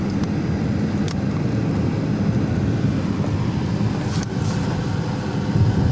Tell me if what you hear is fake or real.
real